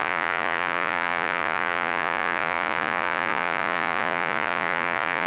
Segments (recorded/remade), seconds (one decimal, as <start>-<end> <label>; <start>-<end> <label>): 0.0-5.3 remade